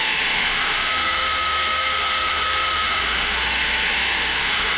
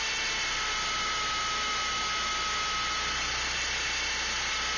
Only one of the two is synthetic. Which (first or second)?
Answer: first